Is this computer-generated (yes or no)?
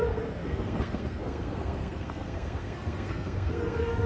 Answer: yes